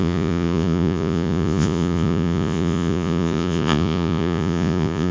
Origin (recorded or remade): remade